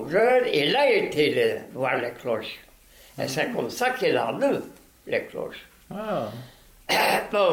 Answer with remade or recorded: remade